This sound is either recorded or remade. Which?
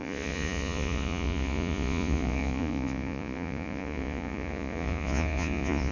remade